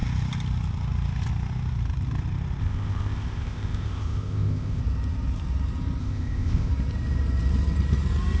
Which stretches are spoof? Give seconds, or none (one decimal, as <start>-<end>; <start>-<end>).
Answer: 2.6-4.8; 6.0-6.7